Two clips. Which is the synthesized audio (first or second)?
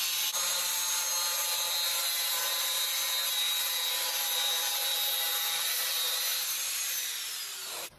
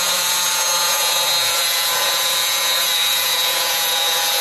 second